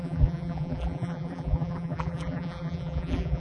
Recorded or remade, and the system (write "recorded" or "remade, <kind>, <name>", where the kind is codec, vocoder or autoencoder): remade, vocoder, BigVGAN v2